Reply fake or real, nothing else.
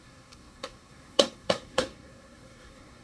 fake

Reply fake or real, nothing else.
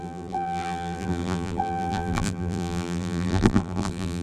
fake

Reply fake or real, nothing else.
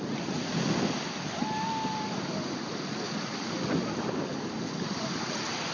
real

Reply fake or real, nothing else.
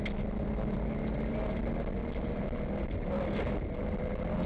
real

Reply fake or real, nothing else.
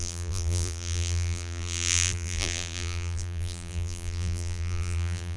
fake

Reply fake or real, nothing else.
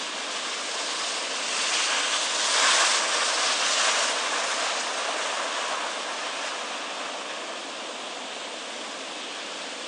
real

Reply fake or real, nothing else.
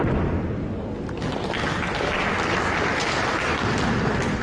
real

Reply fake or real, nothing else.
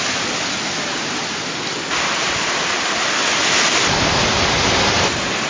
real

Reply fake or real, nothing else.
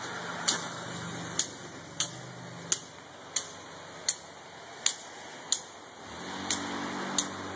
real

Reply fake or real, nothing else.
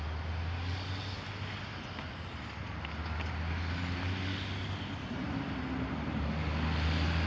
real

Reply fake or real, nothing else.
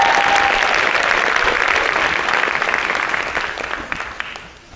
real